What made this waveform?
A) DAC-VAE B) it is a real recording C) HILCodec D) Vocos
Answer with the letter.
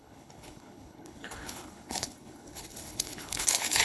C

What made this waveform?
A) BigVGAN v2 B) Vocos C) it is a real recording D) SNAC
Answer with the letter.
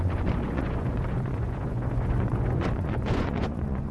B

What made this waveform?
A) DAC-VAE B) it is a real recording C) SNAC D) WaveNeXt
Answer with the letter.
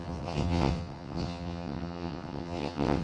D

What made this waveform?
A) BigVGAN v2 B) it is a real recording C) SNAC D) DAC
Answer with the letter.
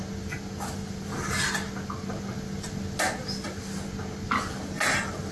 B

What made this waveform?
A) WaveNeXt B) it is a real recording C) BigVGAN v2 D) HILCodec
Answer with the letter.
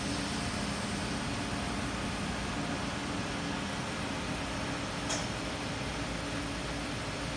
B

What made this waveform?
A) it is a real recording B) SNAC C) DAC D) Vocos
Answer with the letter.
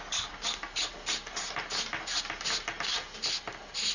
A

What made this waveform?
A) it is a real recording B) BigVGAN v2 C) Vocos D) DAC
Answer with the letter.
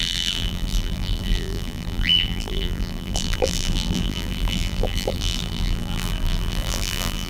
B